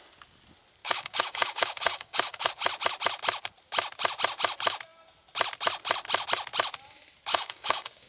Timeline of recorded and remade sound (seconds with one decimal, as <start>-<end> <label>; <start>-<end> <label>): 0.0-0.8 recorded; 0.8-2.5 remade; 2.5-7.3 recorded; 7.3-8.1 remade